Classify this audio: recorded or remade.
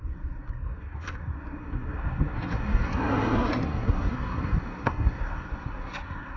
remade